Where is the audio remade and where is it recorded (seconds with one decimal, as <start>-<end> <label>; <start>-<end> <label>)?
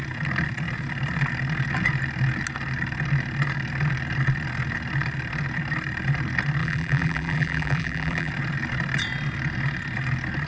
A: 0.0-6.6 recorded; 6.6-8.3 remade; 8.3-10.5 recorded